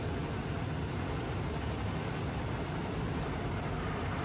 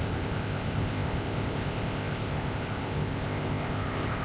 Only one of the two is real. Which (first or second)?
first